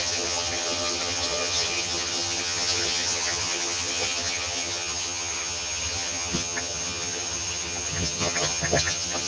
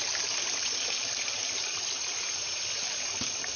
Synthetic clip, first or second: first